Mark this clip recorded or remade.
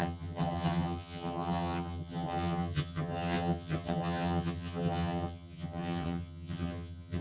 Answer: remade